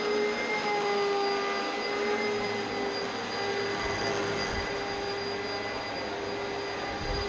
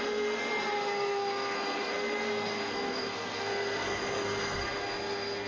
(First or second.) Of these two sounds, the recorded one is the first